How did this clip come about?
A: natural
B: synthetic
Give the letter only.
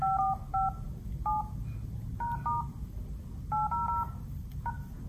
A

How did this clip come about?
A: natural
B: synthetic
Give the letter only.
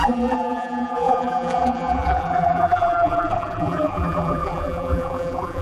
B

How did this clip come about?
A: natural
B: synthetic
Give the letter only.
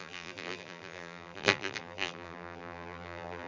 B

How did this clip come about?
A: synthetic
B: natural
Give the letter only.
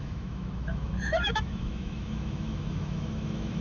A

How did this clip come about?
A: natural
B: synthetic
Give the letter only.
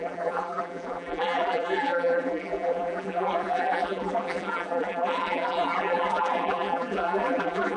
B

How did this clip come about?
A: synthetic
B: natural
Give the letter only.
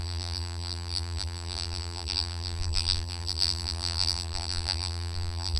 A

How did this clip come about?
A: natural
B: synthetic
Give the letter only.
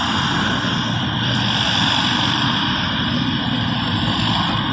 A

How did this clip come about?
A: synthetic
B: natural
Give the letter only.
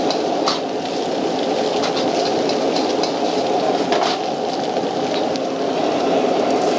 B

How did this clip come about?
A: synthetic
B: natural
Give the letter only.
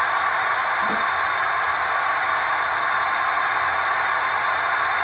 B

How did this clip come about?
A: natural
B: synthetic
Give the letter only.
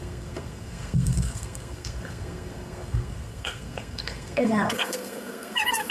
B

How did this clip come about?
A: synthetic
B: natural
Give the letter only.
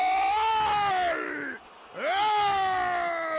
B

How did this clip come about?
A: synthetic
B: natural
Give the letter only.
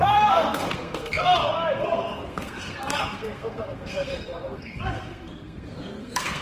A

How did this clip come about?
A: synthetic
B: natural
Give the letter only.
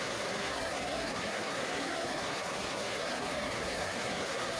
A